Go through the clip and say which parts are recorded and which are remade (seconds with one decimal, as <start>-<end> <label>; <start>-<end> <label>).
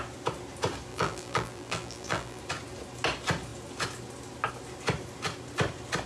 0.0-0.9 recorded; 0.9-2.4 remade; 2.4-6.1 recorded